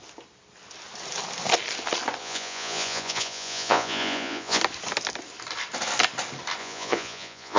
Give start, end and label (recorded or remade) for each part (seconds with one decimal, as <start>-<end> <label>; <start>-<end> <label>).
0.0-2.2 recorded; 2.2-4.6 remade; 4.6-6.6 recorded; 6.6-7.6 remade